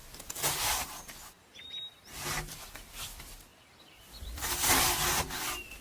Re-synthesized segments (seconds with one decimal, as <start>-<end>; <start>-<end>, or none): none